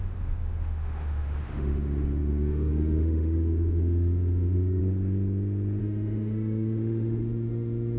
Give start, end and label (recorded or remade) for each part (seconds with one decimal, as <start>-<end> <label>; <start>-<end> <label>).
0.0-4.8 remade; 4.8-5.8 recorded; 5.8-8.0 remade